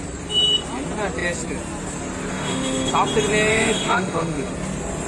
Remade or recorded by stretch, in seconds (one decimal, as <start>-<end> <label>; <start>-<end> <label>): 0.0-2.3 recorded; 2.3-2.9 remade; 2.9-3.5 recorded; 3.5-4.5 remade; 4.5-5.1 recorded